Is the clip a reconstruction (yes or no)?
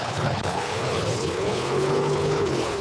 yes